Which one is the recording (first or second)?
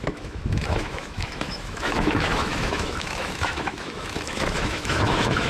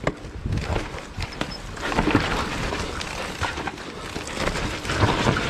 second